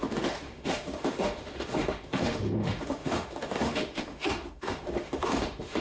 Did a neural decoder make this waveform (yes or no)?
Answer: yes